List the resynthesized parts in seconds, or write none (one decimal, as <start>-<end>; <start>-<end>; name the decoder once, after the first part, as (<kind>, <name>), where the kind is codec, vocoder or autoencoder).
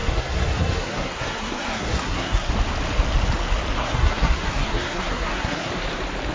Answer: 0.0-2.5 (codec, SNAC); 3.8-5.7